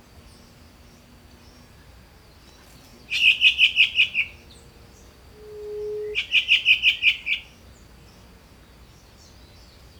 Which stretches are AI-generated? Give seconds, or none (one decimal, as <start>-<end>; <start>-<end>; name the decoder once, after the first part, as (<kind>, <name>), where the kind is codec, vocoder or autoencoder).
none